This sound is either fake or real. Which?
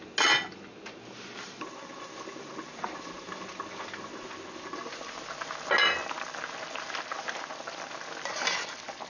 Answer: real